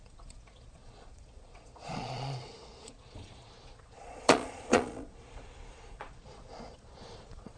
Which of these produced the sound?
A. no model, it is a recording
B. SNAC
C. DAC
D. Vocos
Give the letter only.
D